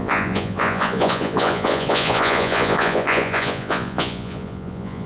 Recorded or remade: remade